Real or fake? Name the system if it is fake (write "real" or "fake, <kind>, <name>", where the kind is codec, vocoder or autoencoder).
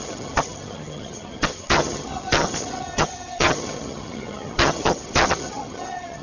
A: fake, vocoder, HiFi-GAN